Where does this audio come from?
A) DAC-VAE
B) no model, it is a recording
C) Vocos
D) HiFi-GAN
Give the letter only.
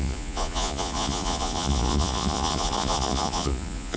C